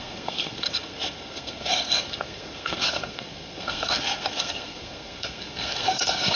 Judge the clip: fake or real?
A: fake